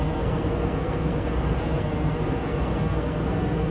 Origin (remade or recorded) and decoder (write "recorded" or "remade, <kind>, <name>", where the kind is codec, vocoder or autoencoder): remade, codec, SNAC